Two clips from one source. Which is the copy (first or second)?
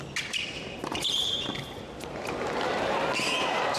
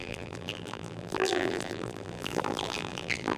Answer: second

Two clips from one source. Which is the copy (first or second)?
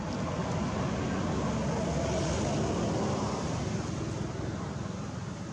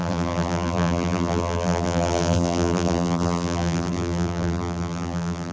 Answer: second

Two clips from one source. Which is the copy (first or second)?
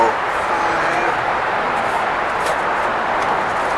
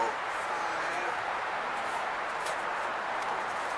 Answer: second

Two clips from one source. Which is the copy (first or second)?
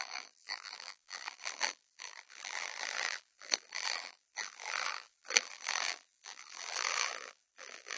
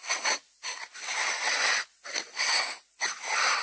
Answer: first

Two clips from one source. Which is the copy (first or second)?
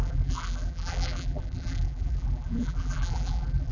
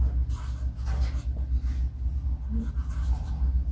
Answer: first